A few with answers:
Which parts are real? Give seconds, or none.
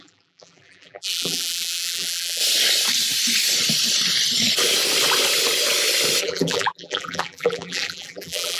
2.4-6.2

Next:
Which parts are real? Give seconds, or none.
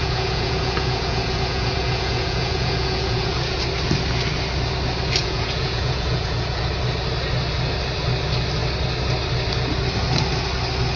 3.6-5.2; 6.7-11.0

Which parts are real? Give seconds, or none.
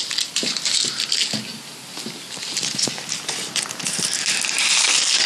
0.0-5.3